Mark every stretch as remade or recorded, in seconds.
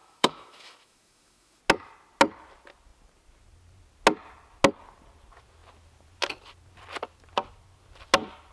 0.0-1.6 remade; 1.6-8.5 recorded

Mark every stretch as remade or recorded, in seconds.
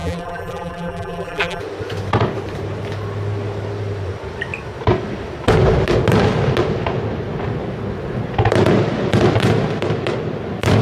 0.0-1.6 remade; 1.6-10.8 recorded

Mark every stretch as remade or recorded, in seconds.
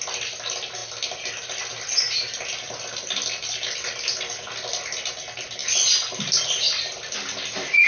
0.0-7.9 recorded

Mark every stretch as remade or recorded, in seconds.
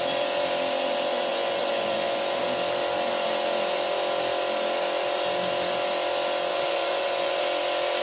0.0-1.3 recorded; 1.3-2.4 remade; 2.4-6.5 recorded; 6.5-7.4 remade; 7.4-8.0 recorded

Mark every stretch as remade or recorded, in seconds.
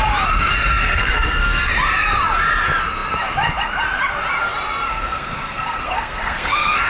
0.0-0.8 recorded; 0.8-1.7 remade; 1.7-4.9 recorded; 4.9-6.9 remade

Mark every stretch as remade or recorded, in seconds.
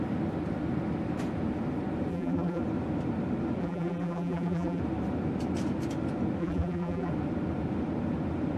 0.0-2.1 recorded; 2.1-2.6 remade; 2.6-3.6 recorded; 3.6-4.8 remade; 4.8-6.4 recorded; 6.4-7.1 remade; 7.1-8.6 recorded